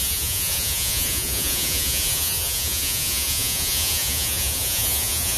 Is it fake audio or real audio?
fake